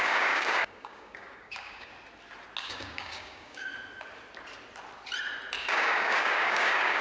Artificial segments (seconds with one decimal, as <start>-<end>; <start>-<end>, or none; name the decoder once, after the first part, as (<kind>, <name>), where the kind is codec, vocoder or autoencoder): 0.0-1.9 (codec, DAC); 2.6-3.7; 5.6-7.0